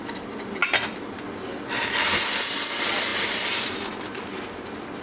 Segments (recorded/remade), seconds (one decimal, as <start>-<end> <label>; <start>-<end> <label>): 0.0-5.0 recorded